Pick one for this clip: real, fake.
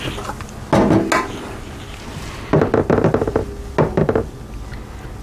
real